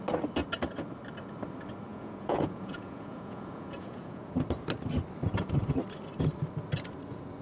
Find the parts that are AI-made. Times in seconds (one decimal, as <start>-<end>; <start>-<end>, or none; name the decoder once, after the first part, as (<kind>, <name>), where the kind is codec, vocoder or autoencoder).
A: 1.9-4.4 (vocoder, Vocos)